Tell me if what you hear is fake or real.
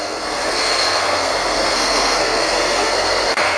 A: fake